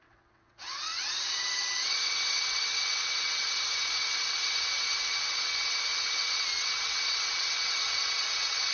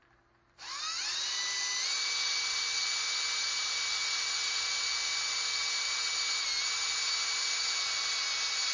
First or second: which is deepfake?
first